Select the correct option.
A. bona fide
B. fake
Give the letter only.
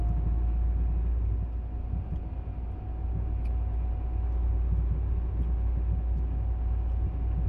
A